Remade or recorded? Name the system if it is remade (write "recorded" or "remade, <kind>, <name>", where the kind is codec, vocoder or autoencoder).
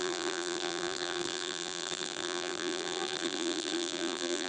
remade, vocoder, BigVGAN v2